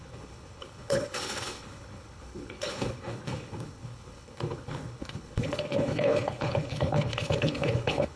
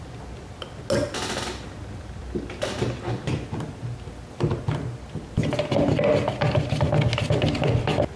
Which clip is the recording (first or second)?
second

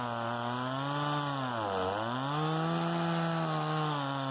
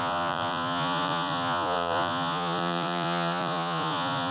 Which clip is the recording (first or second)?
first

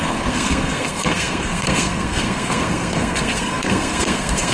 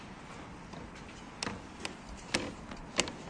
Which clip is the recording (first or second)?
second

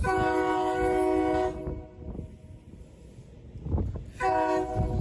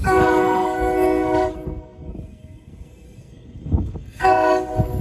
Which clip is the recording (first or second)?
first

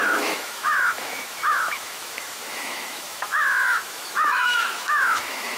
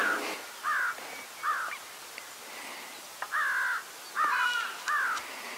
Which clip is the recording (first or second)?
second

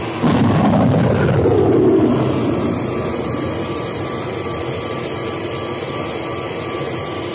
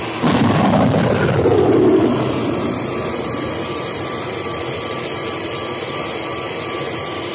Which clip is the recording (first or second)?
first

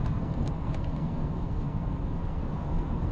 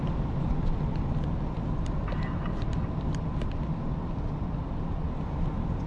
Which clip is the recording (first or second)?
second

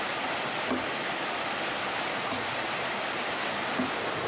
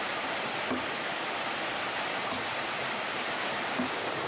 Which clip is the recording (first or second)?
first